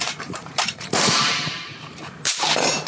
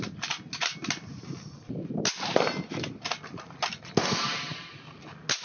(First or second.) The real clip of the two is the second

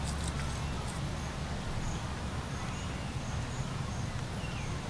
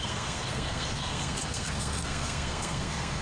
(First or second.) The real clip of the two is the first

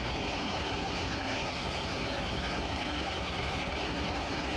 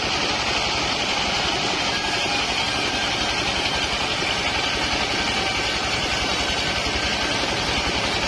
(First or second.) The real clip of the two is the second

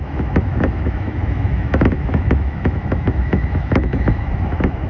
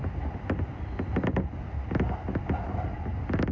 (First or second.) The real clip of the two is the second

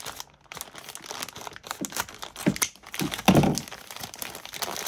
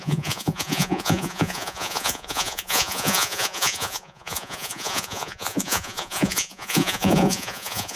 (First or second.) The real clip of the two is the first